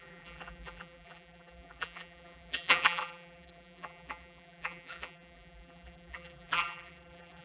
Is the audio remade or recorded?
remade